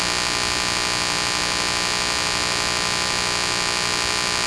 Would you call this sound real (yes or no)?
yes